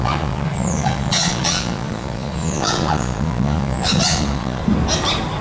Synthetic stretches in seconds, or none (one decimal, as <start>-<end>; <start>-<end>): 0.0-4.6